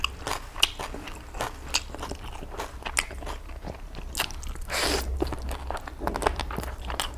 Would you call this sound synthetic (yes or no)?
no